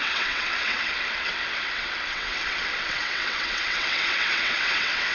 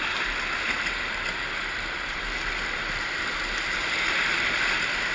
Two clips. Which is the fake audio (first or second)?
first